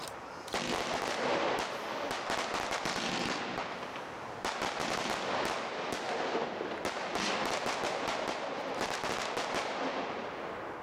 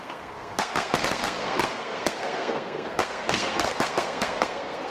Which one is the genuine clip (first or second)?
first